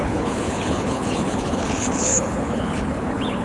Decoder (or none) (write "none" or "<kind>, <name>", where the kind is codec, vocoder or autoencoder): codec, HILCodec